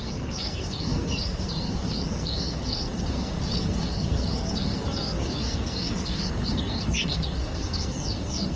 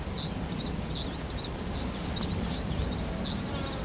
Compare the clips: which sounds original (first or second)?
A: second